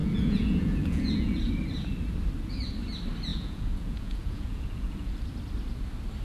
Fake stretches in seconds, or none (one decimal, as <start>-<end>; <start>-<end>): 0.0-1.4; 3.3-5.1